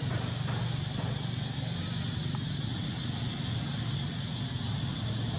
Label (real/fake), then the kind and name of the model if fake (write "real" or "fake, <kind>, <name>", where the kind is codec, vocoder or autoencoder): real